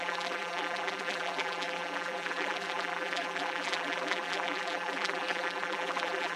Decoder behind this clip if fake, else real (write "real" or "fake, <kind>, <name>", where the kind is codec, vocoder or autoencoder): fake, vocoder, BigVGAN v2